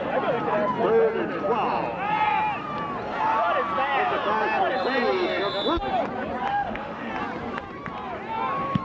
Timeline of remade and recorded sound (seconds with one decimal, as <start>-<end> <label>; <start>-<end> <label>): 0.0-6.5 recorded; 6.5-7.1 remade; 7.1-8.8 recorded